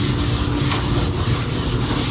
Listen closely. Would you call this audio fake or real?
real